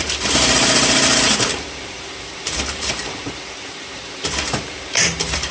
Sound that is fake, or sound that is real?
fake